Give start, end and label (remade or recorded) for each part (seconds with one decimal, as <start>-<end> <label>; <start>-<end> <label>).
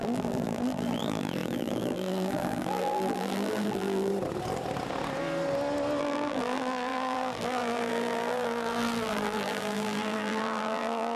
0.0-4.1 remade; 4.1-6.0 recorded; 6.0-11.2 remade